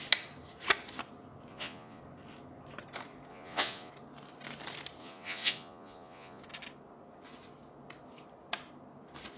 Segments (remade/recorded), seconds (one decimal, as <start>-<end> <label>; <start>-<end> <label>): 0.0-1.5 recorded; 1.5-2.0 remade; 2.0-3.3 recorded; 3.3-3.9 remade; 3.9-5.0 recorded; 5.0-6.4 remade; 6.4-9.4 recorded